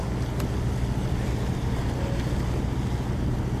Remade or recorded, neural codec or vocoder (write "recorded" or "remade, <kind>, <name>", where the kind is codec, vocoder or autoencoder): recorded